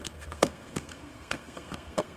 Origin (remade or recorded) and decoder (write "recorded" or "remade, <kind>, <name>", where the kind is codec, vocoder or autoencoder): remade, codec, SNAC